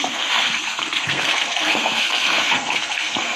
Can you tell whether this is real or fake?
fake